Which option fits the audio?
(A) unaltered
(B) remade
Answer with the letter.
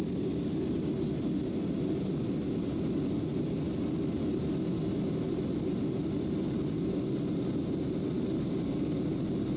A